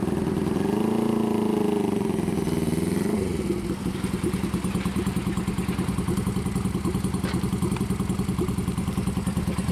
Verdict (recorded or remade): recorded